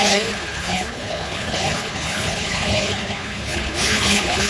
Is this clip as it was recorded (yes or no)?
no